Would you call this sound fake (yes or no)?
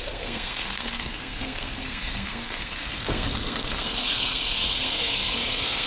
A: yes